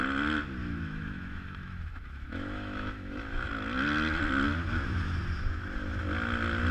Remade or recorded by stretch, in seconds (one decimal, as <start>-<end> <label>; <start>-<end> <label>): 0.0-0.6 recorded; 0.6-3.5 remade; 3.5-6.7 recorded